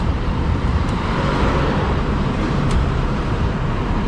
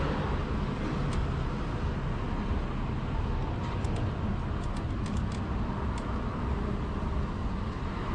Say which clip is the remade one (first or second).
first